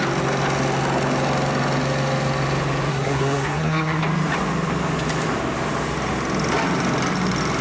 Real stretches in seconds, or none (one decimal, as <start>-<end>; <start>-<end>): 0.0-2.9; 4.0-7.6